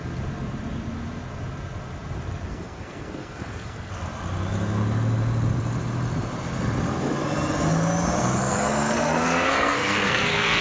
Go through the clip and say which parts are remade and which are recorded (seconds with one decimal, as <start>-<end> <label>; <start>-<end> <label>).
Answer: 0.0-2.5 recorded; 2.5-3.9 remade; 3.9-8.2 recorded; 8.2-10.6 remade